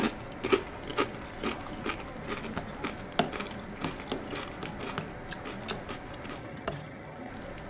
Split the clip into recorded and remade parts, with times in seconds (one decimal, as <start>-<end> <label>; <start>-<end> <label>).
0.0-6.4 recorded; 6.4-7.3 remade; 7.3-7.7 recorded